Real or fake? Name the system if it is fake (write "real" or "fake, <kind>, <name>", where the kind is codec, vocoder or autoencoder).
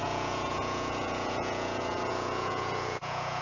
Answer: fake, vocoder, Vocos